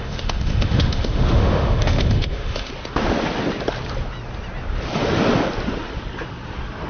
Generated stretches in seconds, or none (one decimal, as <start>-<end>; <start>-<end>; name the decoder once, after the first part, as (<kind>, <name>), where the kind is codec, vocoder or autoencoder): 0.0-2.7 (autoencoder, DAC-VAE)

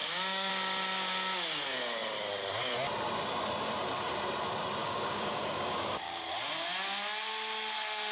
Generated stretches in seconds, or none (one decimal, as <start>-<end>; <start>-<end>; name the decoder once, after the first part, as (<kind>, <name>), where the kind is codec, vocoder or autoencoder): 0.0-0.5 (codec, DAC); 4.8-6.5

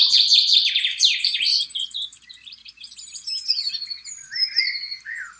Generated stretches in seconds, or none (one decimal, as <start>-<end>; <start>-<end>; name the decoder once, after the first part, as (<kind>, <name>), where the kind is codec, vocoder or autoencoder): 0.4-3.2 (vocoder, BigVGAN v2)

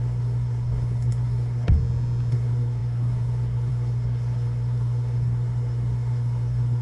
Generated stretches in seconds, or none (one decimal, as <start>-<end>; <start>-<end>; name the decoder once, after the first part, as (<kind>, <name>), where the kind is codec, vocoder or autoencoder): 0.0-1.8 (codec, SNAC); 2.3-6.8